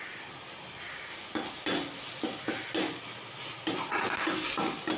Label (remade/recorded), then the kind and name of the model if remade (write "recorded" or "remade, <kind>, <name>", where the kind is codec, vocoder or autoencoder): recorded